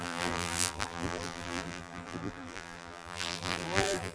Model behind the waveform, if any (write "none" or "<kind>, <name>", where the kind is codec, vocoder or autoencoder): vocoder, BigVGAN v2